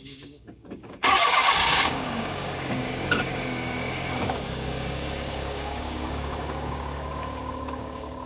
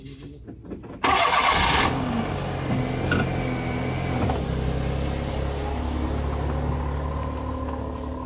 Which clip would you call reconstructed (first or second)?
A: first